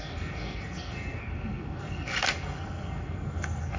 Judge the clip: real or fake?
fake